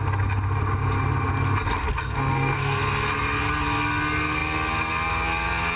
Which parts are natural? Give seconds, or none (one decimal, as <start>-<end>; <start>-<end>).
0.0-1.9; 2.8-5.8